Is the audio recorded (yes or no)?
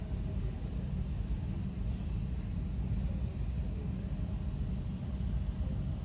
yes